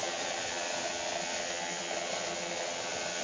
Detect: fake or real fake